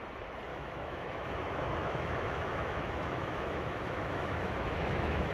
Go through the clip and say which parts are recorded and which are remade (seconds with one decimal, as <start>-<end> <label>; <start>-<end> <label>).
0.0-0.5 recorded; 0.5-1.3 remade; 1.3-1.8 recorded; 1.8-5.3 remade